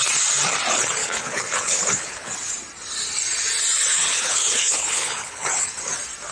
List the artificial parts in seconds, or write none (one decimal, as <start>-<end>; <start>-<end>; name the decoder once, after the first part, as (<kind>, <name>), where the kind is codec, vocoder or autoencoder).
1.0-2.3 (codec, HILCodec); 3.9-5.8